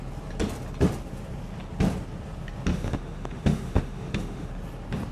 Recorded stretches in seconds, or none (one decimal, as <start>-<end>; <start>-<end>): 0.0-2.7; 4.5-5.1